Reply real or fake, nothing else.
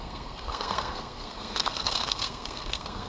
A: fake